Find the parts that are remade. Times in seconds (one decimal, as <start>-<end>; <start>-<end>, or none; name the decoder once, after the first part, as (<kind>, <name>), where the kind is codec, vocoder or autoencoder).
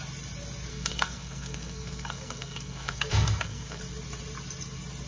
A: 0.7-3.8 (codec, SNAC)